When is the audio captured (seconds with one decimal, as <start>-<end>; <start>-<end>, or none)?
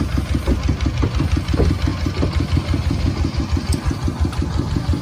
0.0-5.0